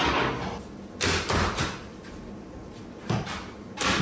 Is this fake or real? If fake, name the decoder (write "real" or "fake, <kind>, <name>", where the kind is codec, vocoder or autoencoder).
real